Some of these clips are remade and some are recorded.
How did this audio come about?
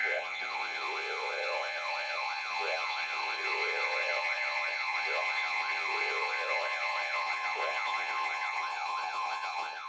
remade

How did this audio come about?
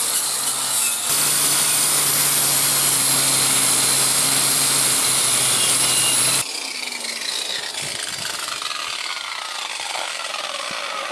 recorded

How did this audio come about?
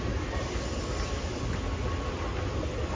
recorded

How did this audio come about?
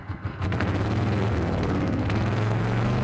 remade